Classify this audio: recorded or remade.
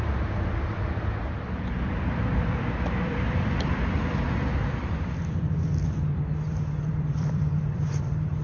remade